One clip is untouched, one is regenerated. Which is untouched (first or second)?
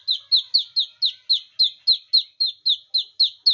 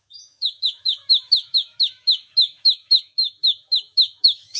first